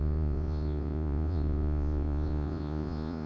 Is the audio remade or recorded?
remade